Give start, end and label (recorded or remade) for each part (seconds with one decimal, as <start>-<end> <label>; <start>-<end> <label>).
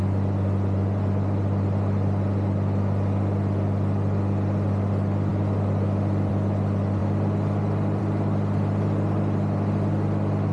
0.0-10.5 recorded